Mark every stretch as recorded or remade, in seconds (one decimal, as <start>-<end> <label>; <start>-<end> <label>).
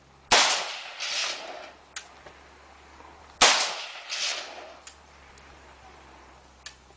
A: 0.0-7.0 recorded